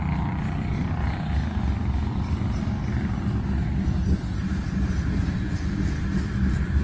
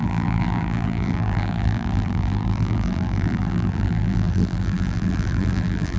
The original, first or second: first